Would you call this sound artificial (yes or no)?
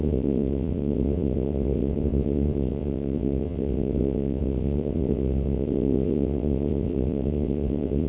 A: yes